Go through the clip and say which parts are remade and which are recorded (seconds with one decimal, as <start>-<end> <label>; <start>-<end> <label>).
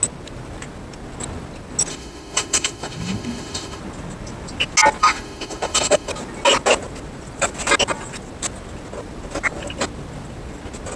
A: 0.0-1.9 recorded; 1.9-3.8 remade; 3.8-5.0 recorded; 5.0-6.1 remade; 6.1-11.0 recorded